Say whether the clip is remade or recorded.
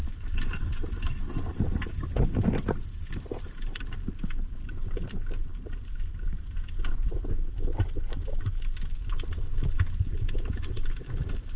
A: recorded